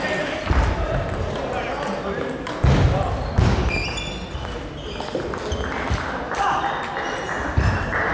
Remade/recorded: recorded